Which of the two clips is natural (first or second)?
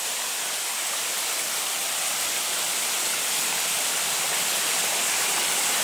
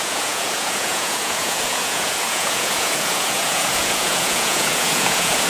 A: first